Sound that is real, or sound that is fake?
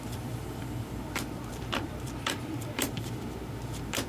fake